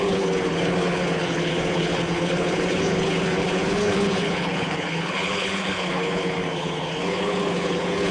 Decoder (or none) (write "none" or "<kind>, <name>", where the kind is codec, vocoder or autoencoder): codec, HILCodec